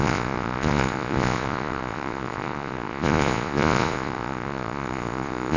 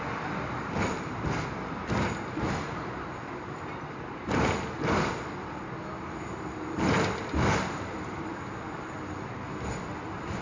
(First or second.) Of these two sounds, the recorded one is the second